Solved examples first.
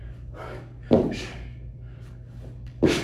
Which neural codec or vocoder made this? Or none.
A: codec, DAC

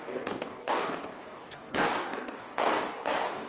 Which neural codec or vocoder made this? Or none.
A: codec, DAC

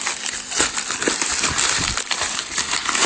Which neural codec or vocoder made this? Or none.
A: none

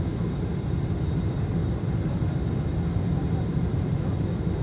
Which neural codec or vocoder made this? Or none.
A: none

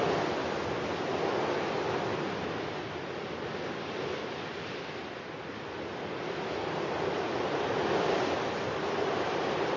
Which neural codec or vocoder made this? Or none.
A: none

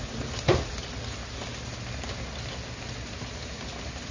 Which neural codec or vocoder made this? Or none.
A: none